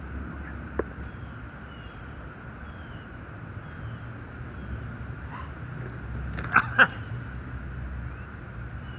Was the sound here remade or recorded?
recorded